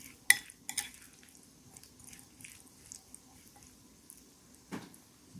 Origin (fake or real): real